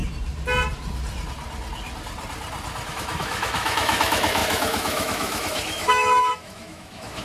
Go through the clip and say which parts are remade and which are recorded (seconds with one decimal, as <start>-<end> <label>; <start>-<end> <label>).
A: 0.0-2.9 recorded; 2.9-7.2 remade